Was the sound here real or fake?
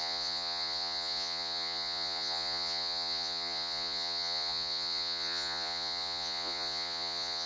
fake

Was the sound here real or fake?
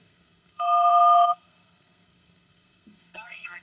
fake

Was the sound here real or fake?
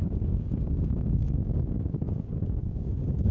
fake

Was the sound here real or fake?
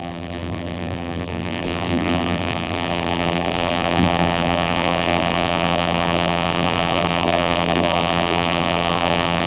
fake